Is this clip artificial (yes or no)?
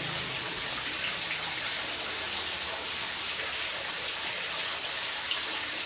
no